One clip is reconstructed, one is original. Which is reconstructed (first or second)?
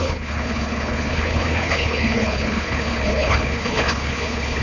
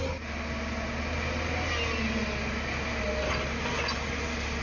first